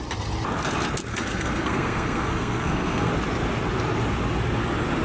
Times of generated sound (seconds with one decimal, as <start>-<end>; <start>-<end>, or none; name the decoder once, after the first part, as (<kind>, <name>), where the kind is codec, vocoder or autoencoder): 1.1-3.1 (codec, SNAC)